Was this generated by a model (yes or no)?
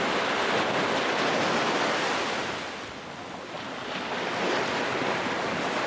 no